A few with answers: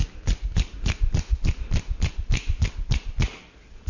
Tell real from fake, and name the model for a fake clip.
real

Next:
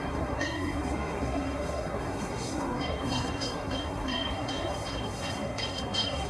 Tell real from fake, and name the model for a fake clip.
fake, codec, SNAC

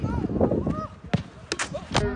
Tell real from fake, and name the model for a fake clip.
real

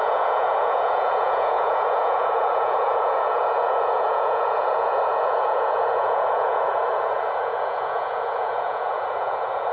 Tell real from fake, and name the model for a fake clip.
fake, vocoder, Vocos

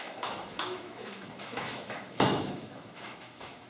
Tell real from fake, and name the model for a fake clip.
fake, autoencoder, DAC-VAE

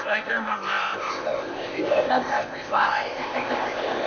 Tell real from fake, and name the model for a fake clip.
fake, codec, ZipCodec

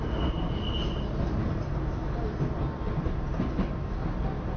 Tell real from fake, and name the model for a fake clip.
real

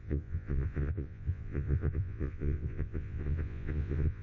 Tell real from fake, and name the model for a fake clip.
fake, vocoder, Vocos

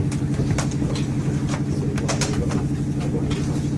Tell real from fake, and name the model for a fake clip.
real